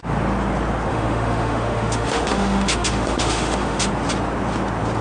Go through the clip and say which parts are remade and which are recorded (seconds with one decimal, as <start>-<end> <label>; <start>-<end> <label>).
0.0-0.9 recorded; 0.9-3.9 remade; 3.9-5.0 recorded